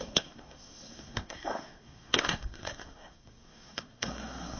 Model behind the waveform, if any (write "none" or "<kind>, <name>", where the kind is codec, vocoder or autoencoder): codec, SNAC